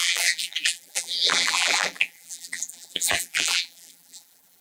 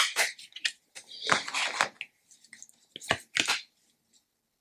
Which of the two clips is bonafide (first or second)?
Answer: second